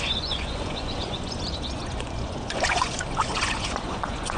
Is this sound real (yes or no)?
no